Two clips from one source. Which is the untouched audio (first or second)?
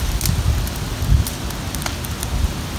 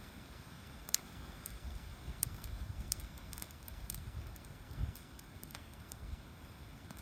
first